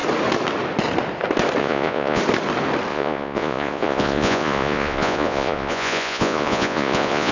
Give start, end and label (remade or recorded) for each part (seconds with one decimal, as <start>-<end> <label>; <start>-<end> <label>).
0.0-1.6 recorded; 1.6-2.2 remade; 2.2-2.9 recorded; 2.9-7.3 remade